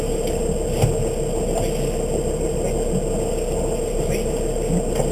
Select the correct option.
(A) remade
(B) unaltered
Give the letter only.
B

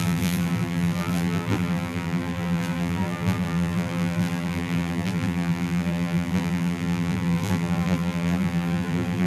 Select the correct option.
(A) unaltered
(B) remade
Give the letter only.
B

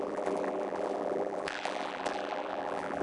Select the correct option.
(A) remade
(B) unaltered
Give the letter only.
A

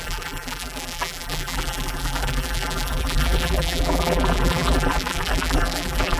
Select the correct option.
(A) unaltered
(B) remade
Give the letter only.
B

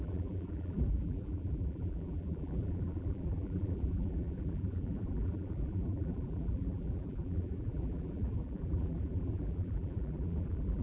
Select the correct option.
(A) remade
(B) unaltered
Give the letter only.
A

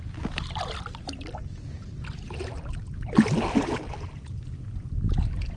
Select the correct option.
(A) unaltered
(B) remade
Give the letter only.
A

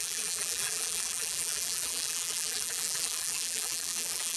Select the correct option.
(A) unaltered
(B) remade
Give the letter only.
B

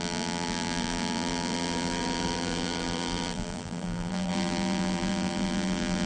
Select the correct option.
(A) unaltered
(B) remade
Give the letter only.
B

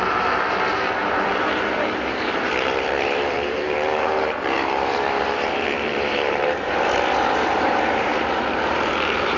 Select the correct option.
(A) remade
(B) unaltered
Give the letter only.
A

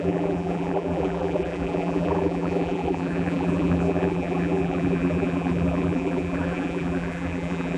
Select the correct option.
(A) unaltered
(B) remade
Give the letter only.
B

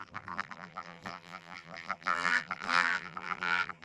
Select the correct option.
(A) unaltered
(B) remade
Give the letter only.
B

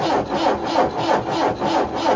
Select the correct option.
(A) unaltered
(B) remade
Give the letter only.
A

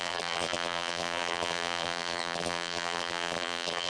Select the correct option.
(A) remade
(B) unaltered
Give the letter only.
A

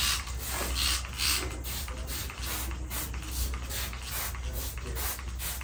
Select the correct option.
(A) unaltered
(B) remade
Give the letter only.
A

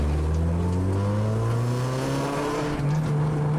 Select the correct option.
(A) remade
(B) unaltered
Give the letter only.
B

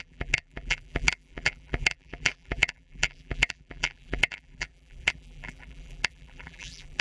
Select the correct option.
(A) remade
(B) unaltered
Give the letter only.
A